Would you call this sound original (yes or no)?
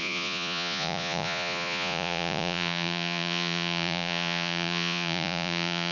no